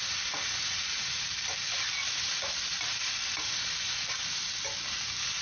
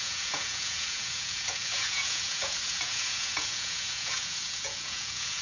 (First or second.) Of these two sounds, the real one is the first